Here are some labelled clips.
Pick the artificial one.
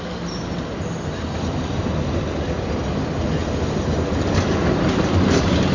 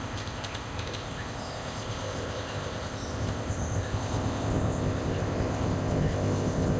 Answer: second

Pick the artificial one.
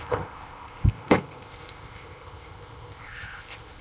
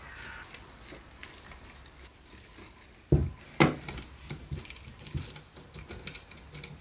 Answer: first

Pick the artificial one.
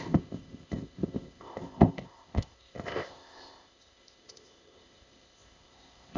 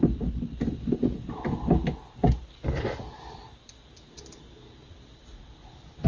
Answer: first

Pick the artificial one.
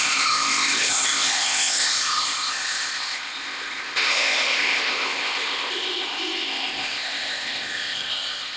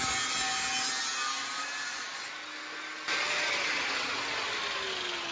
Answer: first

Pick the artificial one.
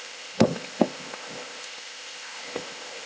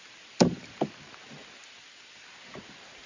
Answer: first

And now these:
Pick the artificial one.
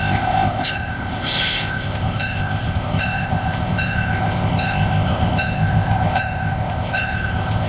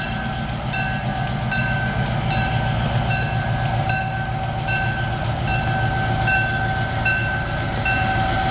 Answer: first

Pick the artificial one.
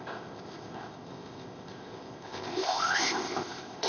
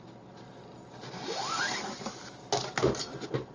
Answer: first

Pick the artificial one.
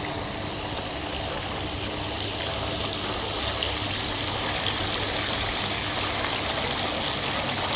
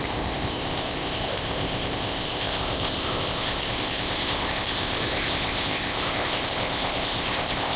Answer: second